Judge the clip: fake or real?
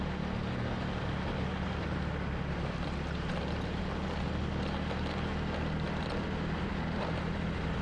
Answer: real